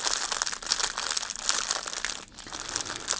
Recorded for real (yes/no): yes